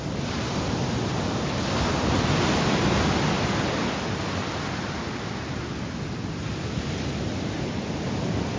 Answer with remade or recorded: recorded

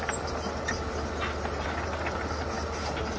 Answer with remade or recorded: recorded